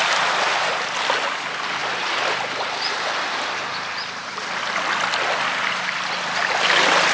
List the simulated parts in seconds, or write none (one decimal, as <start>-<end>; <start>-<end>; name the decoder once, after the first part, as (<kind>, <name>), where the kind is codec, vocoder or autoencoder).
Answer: none